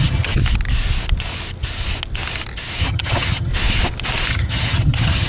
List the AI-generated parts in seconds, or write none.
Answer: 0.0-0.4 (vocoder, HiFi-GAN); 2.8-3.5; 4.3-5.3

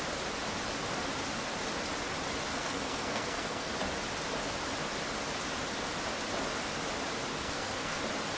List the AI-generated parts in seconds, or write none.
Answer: 2.5-3.7 (codec, SNAC); 7.3-8.0